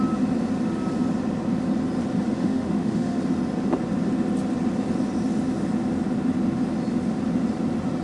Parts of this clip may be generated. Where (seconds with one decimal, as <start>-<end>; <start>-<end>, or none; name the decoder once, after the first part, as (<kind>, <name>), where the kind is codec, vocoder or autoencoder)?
2.3-3.2 (autoencoder, DAC-VAE)